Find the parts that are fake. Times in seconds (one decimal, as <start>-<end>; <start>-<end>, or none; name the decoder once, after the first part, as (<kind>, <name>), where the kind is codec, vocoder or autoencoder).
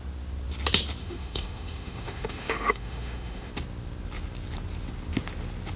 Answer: 1.0-3.5 (autoencoder, DAC-VAE)